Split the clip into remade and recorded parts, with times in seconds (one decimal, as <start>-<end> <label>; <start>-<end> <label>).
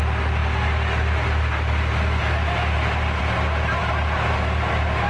0.0-5.1 recorded